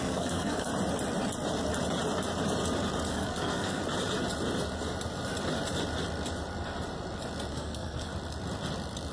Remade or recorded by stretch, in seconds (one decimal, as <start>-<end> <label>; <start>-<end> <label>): 0.0-0.7 remade; 0.7-3.1 recorded; 3.1-3.8 remade; 3.8-7.5 recorded; 7.5-8.1 remade; 8.1-9.1 recorded